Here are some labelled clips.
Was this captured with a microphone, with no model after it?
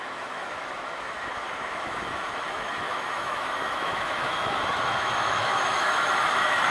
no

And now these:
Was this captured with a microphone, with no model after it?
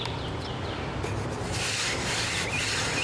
yes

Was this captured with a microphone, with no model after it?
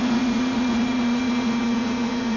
no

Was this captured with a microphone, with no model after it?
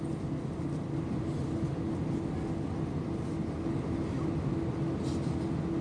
yes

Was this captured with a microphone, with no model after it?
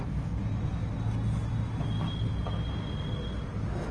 yes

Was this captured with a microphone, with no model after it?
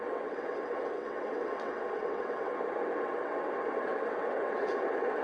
no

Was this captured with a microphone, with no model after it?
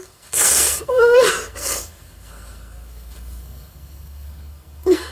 no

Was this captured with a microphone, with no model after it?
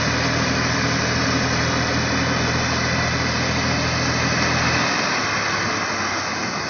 yes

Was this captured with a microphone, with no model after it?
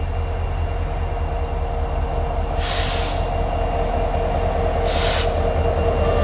yes